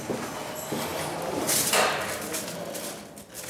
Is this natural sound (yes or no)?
yes